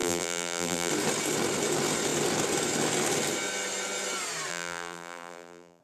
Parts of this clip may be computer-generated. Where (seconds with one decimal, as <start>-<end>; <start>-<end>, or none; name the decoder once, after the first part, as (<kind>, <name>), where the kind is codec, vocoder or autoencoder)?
0.0-0.9 (vocoder, BigVGAN v2); 4.5-5.8